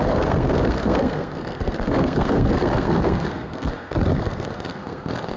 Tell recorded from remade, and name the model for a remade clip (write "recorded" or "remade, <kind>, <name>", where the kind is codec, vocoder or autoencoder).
remade, codec, SNAC